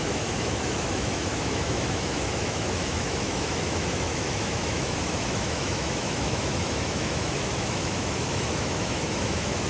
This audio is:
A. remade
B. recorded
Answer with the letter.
A